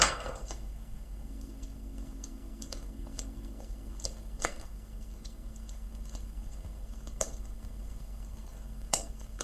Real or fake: fake